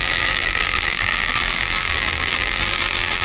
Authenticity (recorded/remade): remade